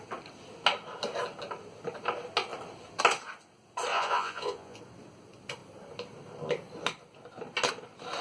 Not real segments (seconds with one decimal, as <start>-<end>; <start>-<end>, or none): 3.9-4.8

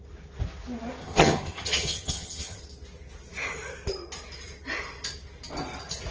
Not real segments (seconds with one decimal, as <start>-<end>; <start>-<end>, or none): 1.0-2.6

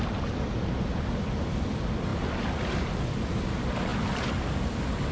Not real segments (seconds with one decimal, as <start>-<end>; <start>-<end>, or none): none

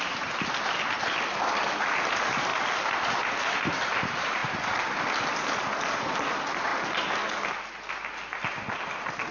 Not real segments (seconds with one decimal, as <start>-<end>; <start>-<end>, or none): none

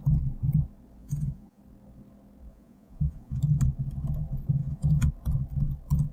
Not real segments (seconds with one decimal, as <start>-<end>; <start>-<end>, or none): 1.0-1.6; 2.5-3.4; 4.6-5.1

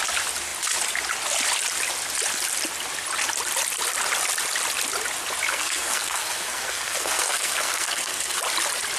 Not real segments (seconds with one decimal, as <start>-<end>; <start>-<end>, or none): 5.5-8.4

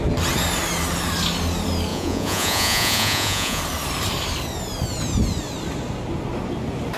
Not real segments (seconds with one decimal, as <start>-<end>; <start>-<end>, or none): 1.9-3.6

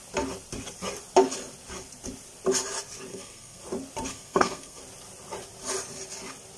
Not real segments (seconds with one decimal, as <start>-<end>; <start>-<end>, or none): 3.1-3.6; 4.1-4.8